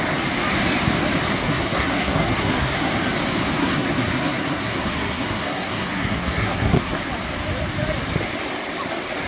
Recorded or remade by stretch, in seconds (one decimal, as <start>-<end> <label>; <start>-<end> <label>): 0.0-1.3 recorded; 1.3-2.9 remade; 2.9-3.6 recorded; 3.6-7.0 remade; 7.0-9.3 recorded